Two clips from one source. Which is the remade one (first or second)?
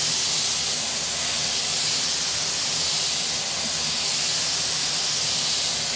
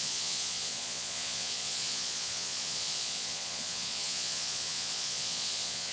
second